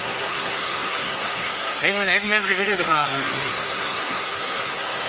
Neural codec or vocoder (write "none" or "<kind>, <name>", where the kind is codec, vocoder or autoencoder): codec, SNAC